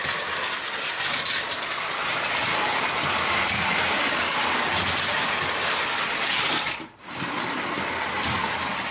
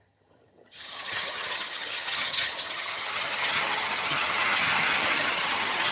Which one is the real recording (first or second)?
first